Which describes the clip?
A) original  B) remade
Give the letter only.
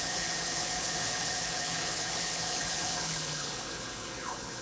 B